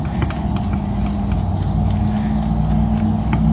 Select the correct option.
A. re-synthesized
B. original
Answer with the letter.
B